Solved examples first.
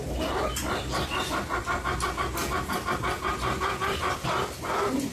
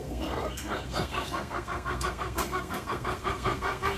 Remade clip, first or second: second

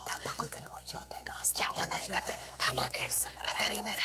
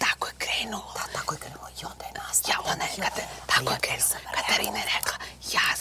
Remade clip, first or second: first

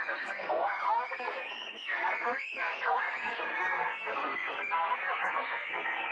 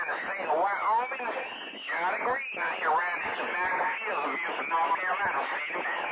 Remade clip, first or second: first